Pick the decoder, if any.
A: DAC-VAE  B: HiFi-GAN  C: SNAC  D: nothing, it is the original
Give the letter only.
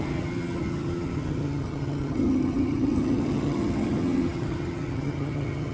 B